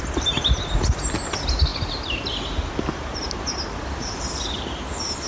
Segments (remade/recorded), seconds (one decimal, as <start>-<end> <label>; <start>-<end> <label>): 0.0-5.3 recorded